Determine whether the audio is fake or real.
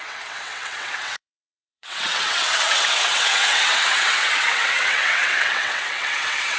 fake